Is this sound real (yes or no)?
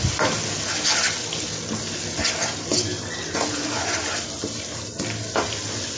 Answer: yes